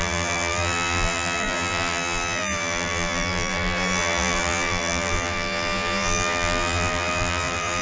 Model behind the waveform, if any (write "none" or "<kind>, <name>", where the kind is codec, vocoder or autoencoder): vocoder, BigVGAN v2